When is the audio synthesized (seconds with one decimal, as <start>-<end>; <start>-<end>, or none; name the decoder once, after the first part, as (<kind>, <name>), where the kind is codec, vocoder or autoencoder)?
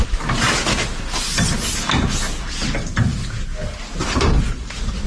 none